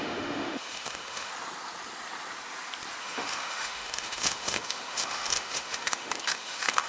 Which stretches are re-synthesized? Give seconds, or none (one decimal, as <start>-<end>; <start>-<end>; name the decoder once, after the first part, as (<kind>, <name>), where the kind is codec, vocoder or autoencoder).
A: 0.0-1.3 (autoencoder, DAC-VAE); 3.0-6.9